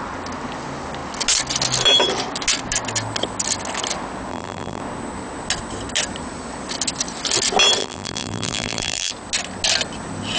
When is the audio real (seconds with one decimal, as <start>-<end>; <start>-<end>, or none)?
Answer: 0.0-4.3; 4.8-7.8; 9.1-10.4